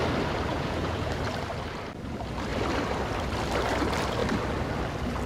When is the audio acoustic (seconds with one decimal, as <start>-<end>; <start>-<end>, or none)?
0.0-0.5; 1.1-5.3